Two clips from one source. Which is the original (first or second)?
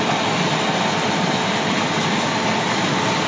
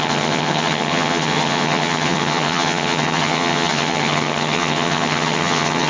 first